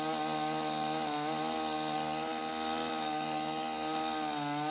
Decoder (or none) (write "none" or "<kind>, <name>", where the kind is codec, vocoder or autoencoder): none